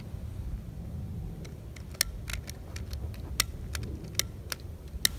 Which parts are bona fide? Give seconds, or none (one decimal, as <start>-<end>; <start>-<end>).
0.0-5.2